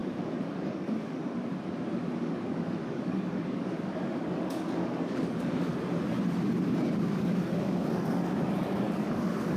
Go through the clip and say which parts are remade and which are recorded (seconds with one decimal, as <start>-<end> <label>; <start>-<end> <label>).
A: 0.0-1.2 remade; 1.2-2.2 recorded; 2.2-5.7 remade; 5.7-7.0 recorded; 7.0-9.6 remade